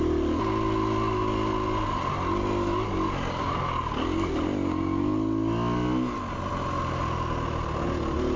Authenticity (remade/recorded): recorded